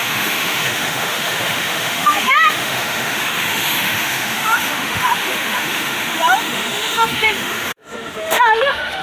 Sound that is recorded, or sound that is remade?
remade